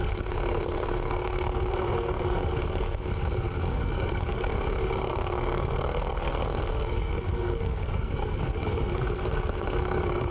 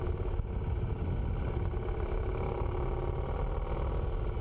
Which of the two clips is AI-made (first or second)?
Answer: first